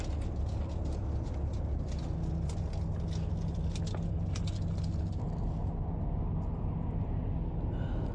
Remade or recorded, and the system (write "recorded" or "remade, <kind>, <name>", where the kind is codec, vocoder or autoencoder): recorded